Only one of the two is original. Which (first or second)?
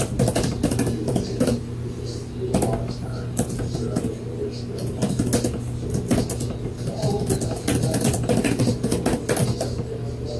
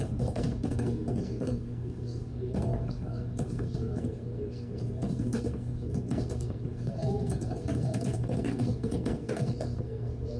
first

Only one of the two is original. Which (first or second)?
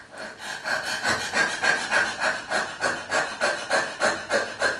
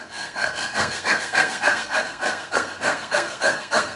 first